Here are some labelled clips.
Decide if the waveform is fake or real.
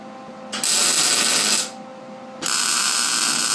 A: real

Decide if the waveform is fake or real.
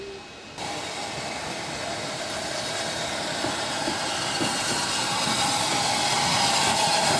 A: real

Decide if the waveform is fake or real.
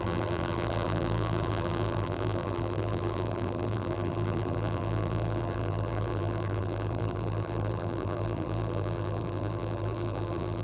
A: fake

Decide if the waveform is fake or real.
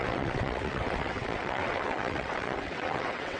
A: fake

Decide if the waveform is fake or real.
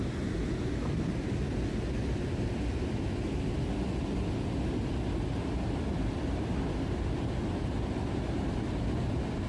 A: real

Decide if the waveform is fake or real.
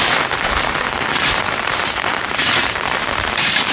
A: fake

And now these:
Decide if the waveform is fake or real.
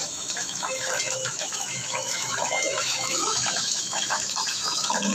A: fake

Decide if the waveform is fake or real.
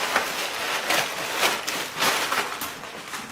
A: real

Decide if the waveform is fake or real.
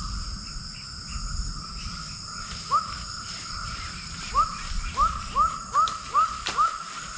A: real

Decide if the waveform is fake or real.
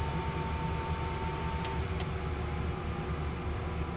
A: real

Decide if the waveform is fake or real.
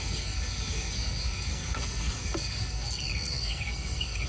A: fake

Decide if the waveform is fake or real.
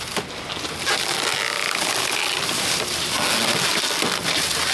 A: real